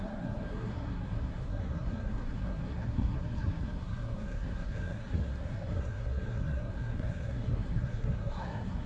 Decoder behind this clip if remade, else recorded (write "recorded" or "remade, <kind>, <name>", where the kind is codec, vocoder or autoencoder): remade, codec, SNAC